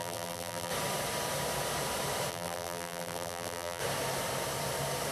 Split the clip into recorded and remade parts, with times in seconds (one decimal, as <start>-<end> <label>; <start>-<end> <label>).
0.0-0.7 remade; 0.7-2.3 recorded; 2.3-3.8 remade; 3.8-5.1 recorded